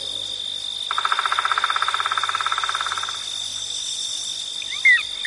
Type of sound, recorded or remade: recorded